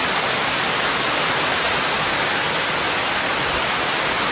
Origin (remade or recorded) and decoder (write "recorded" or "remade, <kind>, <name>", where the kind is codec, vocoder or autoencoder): recorded